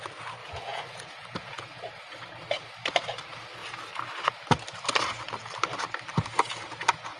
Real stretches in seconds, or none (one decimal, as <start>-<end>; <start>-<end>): 0.0-0.4; 1.8-7.2